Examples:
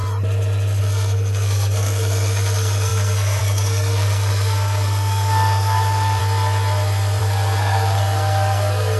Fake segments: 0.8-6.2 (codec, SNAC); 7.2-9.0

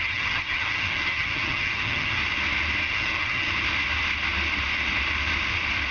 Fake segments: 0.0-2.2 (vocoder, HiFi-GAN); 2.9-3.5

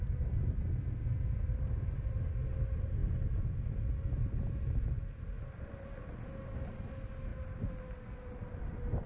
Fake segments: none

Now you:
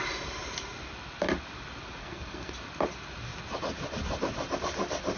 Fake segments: 2.0-2.5 (codec, SNAC)

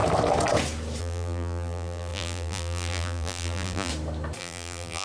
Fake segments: 1.0-3.9 (vocoder, BigVGAN v2); 4.4-5.0

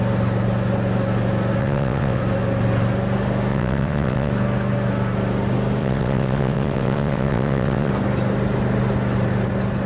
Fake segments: 1.6-2.2 (vocoder, WaveNeXt); 3.5-4.3; 5.8-7.9

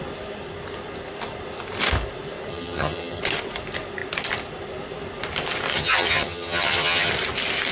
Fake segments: 2.5-3.2 (vocoder, HiFi-GAN); 5.7-7.1

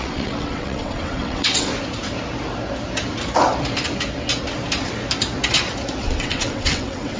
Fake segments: 0.0-1.7 (vocoder, WaveNeXt); 6.0-7.2